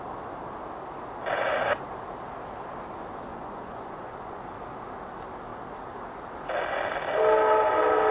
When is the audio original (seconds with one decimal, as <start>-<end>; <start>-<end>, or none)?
0.0-3.3; 4.4-8.1